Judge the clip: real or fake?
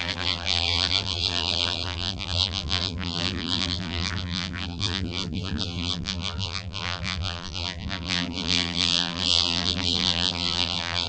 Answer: fake